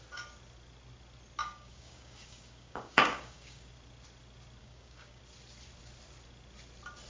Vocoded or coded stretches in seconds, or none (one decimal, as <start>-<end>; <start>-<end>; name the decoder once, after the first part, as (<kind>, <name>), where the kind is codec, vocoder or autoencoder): 1.4-3.7 (codec, DAC); 4.6-5.2